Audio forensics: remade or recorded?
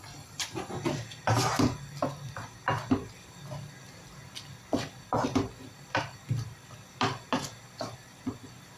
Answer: remade